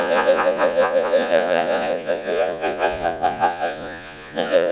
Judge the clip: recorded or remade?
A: remade